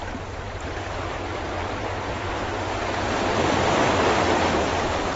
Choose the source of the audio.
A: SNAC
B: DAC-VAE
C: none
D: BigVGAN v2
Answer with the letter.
D